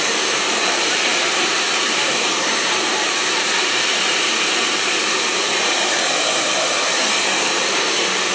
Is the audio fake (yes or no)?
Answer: yes